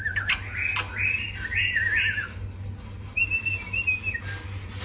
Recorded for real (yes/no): yes